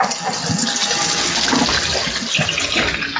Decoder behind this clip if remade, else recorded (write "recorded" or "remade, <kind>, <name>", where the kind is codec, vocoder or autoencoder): recorded